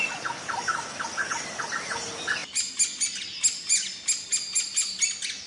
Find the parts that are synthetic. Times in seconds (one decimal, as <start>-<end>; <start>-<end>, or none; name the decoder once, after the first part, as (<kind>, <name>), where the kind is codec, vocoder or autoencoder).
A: none